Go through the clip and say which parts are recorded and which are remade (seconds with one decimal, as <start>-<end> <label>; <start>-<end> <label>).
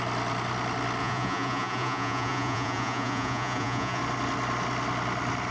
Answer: 0.0-1.0 recorded; 1.0-4.0 remade; 4.0-5.5 recorded